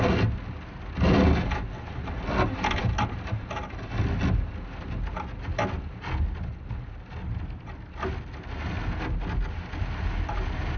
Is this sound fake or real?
real